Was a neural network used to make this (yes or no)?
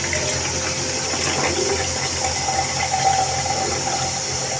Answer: no